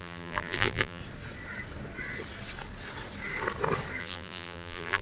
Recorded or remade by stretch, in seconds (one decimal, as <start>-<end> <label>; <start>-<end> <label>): 0.0-1.0 remade; 1.0-4.0 recorded; 4.0-5.0 remade